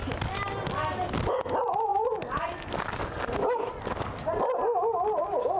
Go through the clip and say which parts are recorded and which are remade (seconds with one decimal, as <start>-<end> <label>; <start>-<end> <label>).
0.0-5.6 recorded